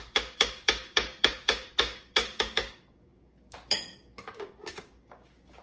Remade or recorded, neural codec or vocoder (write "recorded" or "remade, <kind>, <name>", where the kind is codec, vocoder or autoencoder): remade, codec, DAC